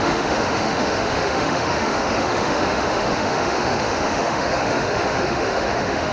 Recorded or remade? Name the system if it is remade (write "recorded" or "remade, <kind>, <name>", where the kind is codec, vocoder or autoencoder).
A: remade, autoencoder, DAC-VAE